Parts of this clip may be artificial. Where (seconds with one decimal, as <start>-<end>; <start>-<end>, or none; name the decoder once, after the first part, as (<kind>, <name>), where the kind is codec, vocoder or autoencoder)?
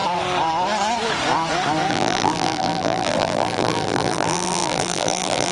1.9-5.5 (vocoder, BigVGAN v2)